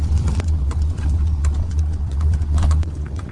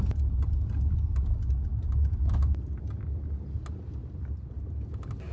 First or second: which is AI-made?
first